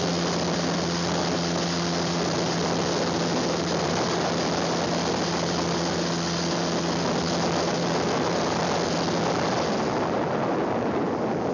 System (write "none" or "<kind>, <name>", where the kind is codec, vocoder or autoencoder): none